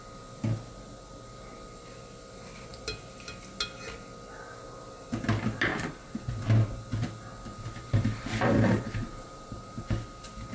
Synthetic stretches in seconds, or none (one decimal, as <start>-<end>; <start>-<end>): 5.7-6.3; 7.5-9.8